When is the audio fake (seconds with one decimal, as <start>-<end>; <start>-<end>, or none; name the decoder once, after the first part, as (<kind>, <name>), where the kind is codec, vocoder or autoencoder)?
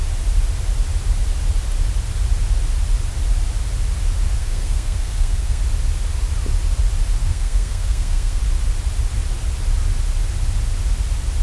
4.4-5.6 (codec, SNAC); 7.2-8.4